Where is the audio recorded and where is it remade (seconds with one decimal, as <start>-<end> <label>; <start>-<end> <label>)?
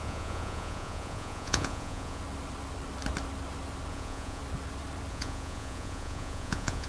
0.0-2.2 remade; 2.2-3.9 recorded; 3.9-4.4 remade; 4.4-5.1 recorded; 5.1-6.9 remade